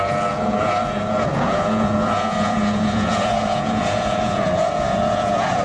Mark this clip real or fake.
fake